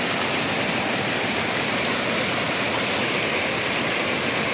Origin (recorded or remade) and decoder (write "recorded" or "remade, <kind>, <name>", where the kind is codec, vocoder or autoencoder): recorded